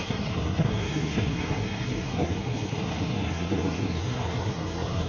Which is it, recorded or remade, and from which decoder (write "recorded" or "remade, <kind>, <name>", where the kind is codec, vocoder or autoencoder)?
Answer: remade, codec, SNAC